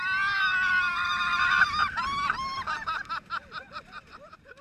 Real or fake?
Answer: real